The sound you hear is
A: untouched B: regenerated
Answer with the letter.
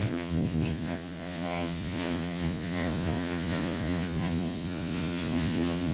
B